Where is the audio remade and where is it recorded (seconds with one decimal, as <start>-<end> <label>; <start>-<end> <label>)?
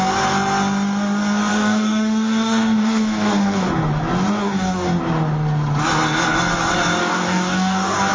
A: 0.0-1.5 recorded; 1.5-3.7 remade; 3.7-4.4 recorded; 4.4-5.0 remade; 5.0-7.0 recorded; 7.0-8.1 remade